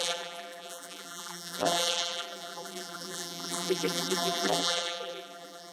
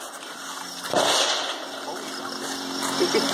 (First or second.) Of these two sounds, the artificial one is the first